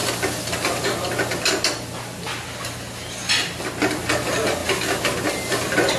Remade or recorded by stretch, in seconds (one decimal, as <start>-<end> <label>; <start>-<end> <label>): 0.0-6.0 recorded